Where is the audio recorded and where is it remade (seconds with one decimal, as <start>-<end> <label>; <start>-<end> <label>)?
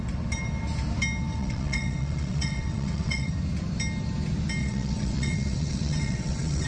0.0-1.3 recorded; 1.3-3.3 remade; 3.3-4.6 recorded; 4.6-6.7 remade